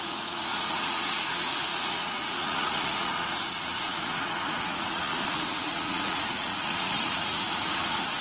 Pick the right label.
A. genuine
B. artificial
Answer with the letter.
B